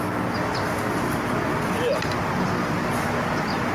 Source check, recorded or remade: recorded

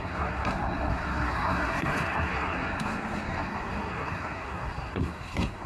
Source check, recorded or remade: remade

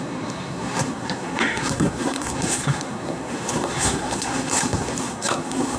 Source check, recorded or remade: remade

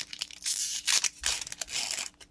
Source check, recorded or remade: recorded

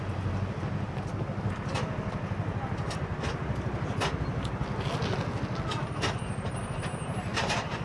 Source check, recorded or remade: recorded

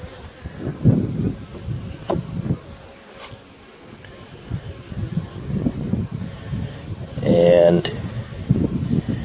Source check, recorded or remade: recorded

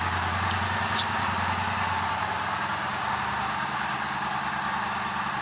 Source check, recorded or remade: recorded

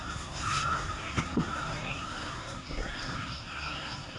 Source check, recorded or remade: remade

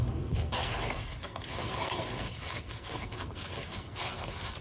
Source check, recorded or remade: remade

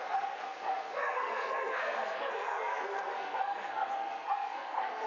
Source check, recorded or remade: remade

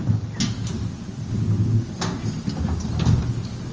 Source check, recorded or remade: recorded